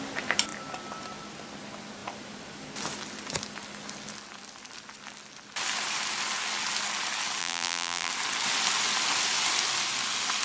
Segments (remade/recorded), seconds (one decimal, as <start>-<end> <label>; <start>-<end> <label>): 0.0-7.4 recorded; 7.4-8.1 remade; 8.1-10.4 recorded